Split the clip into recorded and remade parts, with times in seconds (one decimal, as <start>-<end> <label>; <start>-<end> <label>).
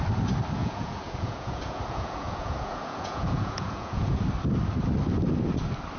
0.0-0.6 recorded; 0.6-4.2 remade; 4.2-6.0 recorded